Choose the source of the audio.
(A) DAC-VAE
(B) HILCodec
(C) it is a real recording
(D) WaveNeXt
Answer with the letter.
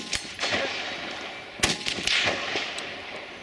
C